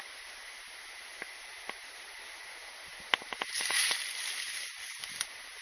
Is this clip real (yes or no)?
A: yes